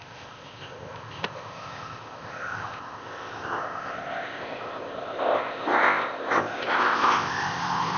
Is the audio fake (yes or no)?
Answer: yes